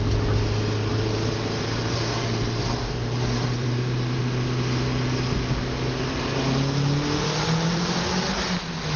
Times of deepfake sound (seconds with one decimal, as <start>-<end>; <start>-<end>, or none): 0.9-4.2